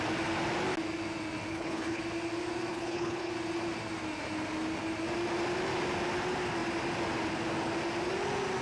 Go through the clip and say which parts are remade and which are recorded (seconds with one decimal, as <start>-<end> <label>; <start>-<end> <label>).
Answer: 0.0-1.5 recorded; 1.5-2.0 remade; 2.0-2.7 recorded; 2.7-3.3 remade; 3.3-8.6 recorded